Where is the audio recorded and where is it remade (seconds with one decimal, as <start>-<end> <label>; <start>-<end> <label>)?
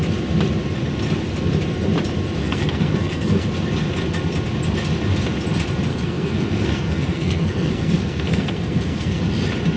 0.0-2.4 recorded; 2.4-3.5 remade; 3.5-5.9 recorded; 5.9-9.2 remade; 9.2-9.8 recorded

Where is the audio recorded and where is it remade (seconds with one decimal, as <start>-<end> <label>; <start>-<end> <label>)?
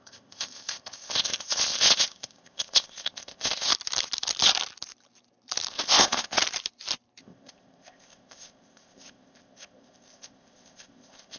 0.0-3.7 remade; 3.7-5.7 recorded; 5.7-6.4 remade; 6.4-7.2 recorded; 7.2-11.4 remade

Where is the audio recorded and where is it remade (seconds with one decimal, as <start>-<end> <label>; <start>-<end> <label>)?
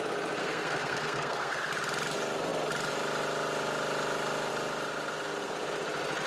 0.0-0.4 recorded; 0.4-1.6 remade; 1.6-6.3 recorded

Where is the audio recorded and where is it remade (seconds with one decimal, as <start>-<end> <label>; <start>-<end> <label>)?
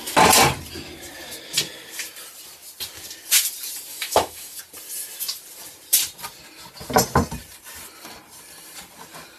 0.0-3.9 recorded; 3.9-4.6 remade; 4.6-9.4 recorded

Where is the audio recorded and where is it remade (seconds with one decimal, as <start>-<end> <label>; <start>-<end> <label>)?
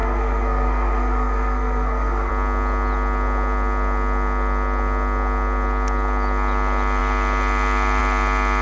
0.0-2.3 remade; 2.3-8.6 recorded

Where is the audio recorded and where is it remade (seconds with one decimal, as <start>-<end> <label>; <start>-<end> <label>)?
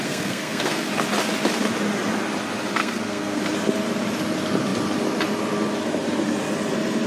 0.0-0.9 remade; 0.9-2.8 recorded; 2.8-3.4 remade; 3.4-7.1 recorded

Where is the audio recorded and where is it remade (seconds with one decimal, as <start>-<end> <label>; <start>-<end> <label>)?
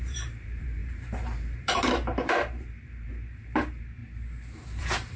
0.0-4.0 remade; 4.0-4.8 recorded; 4.8-5.2 remade